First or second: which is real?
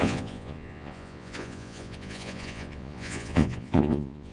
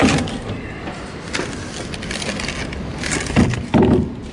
second